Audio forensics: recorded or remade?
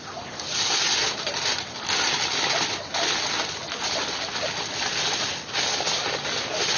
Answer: recorded